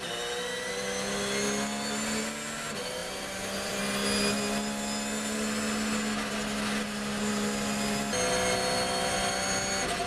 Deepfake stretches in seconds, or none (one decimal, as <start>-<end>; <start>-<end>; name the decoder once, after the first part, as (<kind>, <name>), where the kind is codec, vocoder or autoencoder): 3.0-3.8 (vocoder, BigVGAN v2)